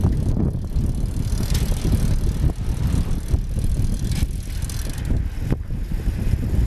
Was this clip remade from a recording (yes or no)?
no